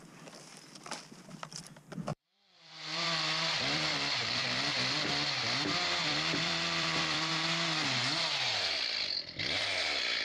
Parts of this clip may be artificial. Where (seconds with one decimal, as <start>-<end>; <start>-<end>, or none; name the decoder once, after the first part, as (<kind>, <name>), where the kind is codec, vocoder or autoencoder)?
2.1-5.1 (vocoder, BigVGAN v2); 6.1-7.3

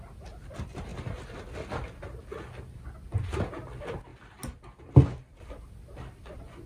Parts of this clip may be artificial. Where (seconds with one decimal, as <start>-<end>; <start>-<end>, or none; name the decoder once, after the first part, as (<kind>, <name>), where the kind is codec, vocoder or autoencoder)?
none

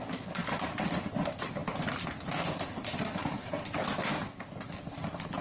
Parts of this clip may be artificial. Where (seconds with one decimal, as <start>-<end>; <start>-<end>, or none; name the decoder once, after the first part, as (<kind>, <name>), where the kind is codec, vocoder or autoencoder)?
0.4-0.9 (vocoder, BigVGAN v2)

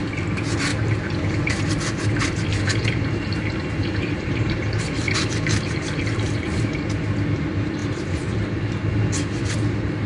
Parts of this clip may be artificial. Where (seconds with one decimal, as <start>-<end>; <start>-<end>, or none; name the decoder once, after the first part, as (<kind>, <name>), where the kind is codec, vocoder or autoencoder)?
0.7-1.7 (vocoder, BigVGAN v2); 2.5-6.7; 7.8-8.9